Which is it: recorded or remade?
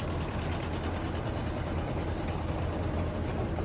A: recorded